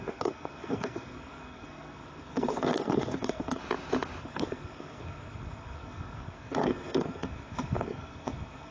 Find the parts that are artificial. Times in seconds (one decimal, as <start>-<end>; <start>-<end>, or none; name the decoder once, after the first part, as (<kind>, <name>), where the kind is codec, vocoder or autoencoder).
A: 0.0-3.6 (codec, SNAC); 4.2-8.7